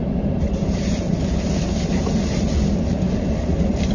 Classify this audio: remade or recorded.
remade